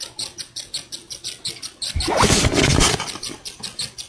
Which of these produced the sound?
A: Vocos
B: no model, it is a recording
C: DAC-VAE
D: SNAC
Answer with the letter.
B